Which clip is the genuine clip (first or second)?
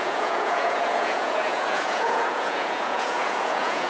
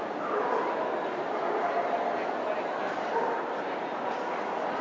second